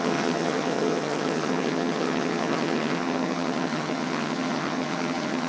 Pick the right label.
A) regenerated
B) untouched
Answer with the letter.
A